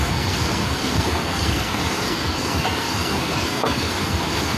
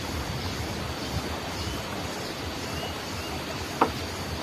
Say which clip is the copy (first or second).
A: first